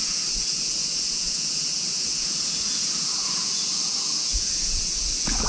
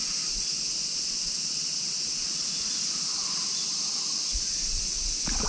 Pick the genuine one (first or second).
second